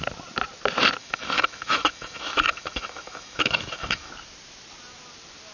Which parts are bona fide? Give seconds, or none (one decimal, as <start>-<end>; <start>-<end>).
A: 0.0-1.0; 4.1-5.5